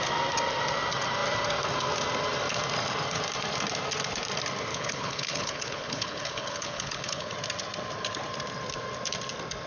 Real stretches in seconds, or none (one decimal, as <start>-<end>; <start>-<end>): 0.0-4.7; 7.3-9.7